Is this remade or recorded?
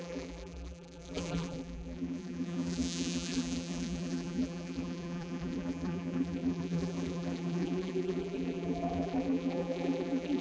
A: remade